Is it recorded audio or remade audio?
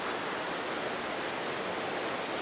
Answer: recorded